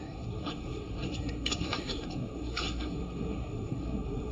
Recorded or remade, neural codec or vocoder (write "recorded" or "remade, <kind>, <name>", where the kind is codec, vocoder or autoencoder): remade, codec, SNAC